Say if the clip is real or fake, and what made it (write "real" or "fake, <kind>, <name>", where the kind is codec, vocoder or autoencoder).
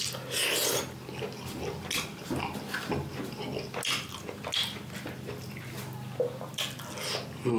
real